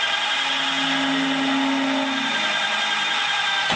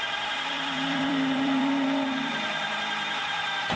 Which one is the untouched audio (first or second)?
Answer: first